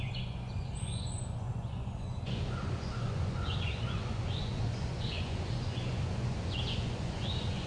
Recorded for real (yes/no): no